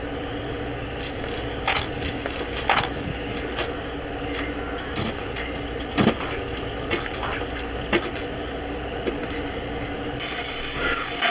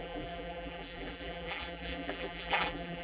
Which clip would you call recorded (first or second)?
first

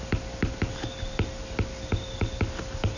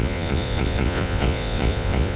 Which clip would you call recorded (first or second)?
first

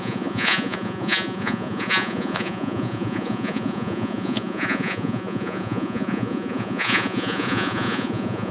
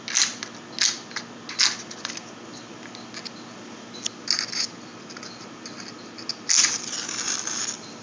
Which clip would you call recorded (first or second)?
second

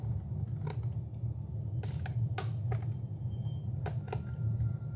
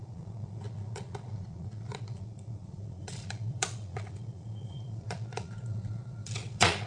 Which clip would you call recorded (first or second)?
first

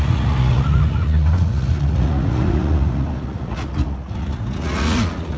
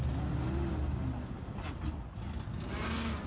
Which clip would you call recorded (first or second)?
second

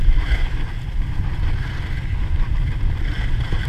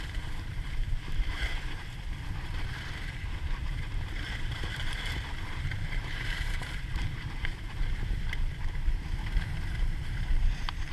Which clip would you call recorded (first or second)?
first